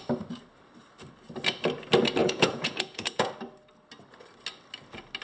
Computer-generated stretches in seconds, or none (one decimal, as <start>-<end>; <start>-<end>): 2.2-3.3